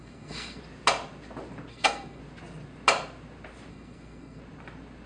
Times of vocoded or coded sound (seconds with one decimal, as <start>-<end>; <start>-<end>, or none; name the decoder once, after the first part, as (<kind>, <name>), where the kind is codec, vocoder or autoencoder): 0.0-0.6 (codec, SNAC); 1.7-2.2; 3.7-4.4